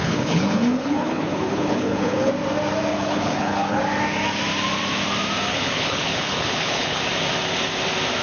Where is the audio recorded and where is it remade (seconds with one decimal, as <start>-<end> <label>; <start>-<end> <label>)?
0.0-2.3 remade; 2.3-2.9 recorded; 2.9-3.8 remade; 3.8-5.5 recorded; 5.5-7.0 remade; 7.0-8.2 recorded